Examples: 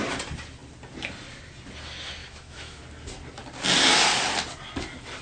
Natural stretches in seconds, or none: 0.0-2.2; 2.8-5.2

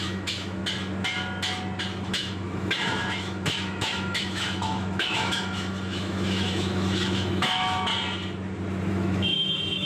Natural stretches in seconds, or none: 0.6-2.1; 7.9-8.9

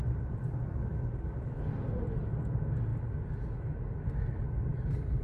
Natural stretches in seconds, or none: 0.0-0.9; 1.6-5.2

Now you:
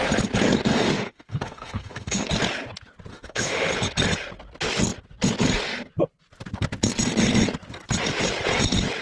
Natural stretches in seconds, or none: 0.0-0.7; 2.3-3.1; 3.7-9.0